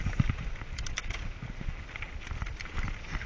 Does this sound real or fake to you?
real